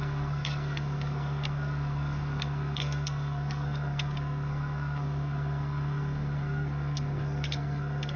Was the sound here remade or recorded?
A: remade